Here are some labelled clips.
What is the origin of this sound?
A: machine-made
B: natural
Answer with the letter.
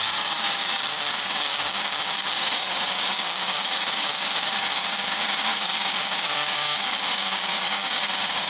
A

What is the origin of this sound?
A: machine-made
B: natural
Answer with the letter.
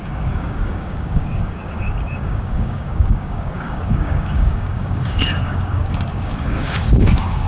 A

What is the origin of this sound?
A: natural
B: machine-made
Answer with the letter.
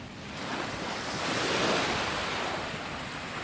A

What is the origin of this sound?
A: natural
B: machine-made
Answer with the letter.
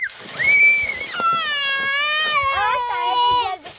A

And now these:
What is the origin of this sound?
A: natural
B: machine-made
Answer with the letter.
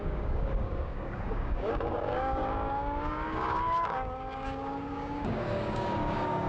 B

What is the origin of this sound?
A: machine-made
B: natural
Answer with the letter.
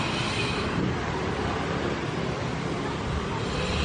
B